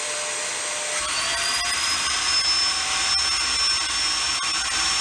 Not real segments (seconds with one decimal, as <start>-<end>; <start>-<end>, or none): none